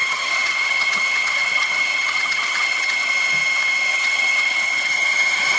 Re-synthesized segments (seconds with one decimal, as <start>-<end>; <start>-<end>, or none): 0.0-3.1; 3.9-5.6